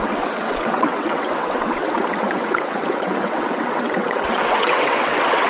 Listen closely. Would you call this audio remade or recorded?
remade